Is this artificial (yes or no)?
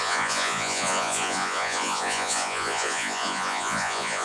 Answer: yes